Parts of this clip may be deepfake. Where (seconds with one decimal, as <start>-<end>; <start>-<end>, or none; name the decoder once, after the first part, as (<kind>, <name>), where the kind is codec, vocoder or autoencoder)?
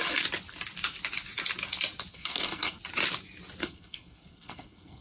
2.1-2.8 (codec, SNAC); 3.6-5.0